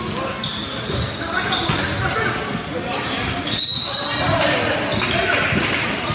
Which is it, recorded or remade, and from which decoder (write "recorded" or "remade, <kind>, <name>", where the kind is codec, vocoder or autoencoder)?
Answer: recorded